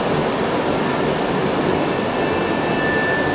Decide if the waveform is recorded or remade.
recorded